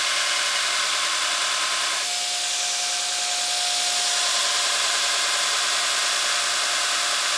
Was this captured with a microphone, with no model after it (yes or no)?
yes